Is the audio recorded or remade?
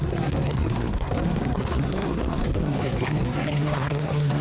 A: remade